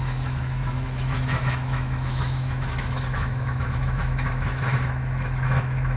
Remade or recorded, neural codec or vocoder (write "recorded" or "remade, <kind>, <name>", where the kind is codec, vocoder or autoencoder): remade, autoencoder, DAC-VAE